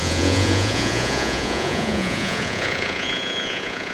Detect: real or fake fake